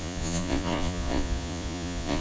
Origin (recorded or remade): remade